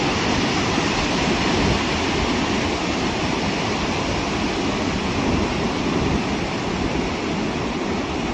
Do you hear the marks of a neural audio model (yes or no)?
no